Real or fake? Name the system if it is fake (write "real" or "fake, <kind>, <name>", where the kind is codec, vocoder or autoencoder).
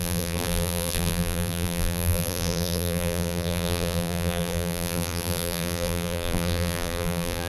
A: fake, vocoder, BigVGAN v2